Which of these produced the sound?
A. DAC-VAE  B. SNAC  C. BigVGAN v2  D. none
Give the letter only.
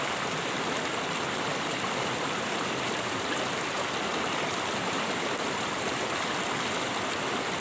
D